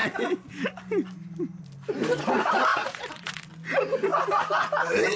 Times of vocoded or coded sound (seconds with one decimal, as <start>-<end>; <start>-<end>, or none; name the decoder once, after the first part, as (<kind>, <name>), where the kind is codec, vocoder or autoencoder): 2.7-3.3 (vocoder, Vocos)